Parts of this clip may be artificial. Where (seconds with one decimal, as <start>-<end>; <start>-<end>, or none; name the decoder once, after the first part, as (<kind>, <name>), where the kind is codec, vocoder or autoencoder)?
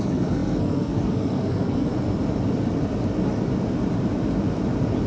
0.0-1.9 (codec, SNAC)